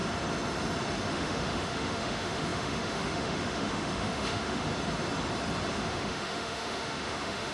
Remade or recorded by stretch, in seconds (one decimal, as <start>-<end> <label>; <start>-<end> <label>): 0.0-1.1 recorded; 1.1-4.7 remade; 4.7-5.7 recorded; 5.7-7.5 remade